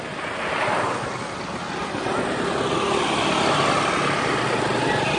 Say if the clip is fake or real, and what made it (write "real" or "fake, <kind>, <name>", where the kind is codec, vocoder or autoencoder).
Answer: real